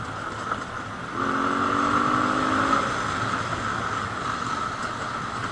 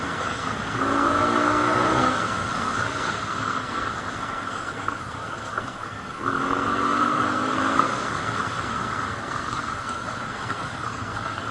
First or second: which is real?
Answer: first